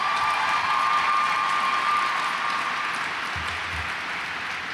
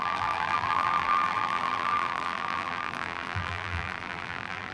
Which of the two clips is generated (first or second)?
second